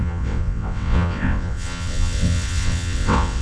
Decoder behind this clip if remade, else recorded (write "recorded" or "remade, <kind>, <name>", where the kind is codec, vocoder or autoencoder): remade, vocoder, WaveNeXt